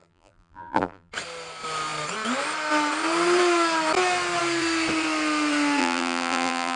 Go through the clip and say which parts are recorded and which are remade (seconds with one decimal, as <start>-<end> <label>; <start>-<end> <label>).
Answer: 0.0-1.1 remade; 1.1-5.8 recorded; 5.8-6.8 remade